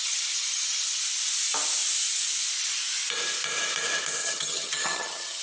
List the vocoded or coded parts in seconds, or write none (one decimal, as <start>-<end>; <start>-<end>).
0.0-1.0; 4.2-5.4